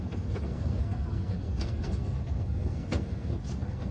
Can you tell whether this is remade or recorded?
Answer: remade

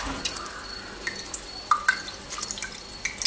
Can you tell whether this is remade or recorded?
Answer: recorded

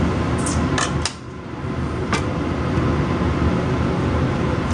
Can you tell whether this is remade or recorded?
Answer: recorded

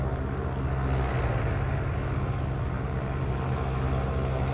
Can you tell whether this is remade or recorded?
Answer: recorded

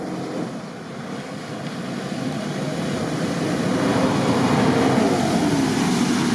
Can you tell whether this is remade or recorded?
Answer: recorded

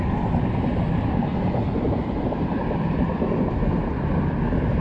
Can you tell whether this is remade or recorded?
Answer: recorded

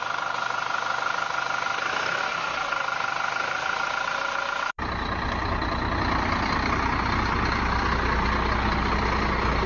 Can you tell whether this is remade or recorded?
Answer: recorded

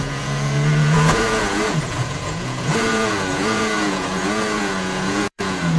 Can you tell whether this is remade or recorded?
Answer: remade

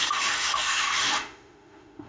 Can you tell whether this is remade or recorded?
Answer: remade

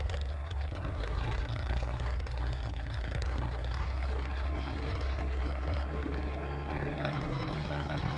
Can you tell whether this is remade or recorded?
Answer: remade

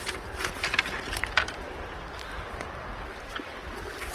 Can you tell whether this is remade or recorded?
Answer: recorded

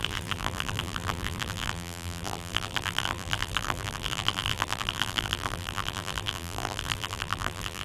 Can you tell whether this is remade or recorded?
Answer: remade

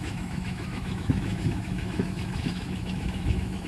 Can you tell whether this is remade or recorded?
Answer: remade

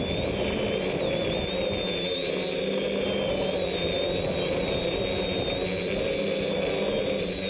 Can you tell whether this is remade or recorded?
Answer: recorded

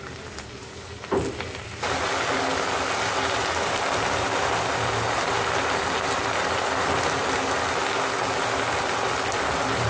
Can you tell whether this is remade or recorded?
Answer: recorded